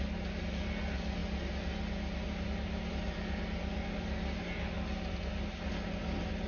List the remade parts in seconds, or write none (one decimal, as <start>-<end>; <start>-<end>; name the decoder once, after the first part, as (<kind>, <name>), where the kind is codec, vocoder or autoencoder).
none